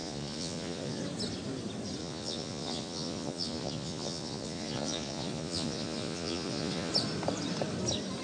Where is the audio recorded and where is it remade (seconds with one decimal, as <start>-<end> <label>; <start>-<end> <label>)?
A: 0.0-1.0 remade; 1.0-2.0 recorded; 2.0-6.9 remade; 6.9-8.2 recorded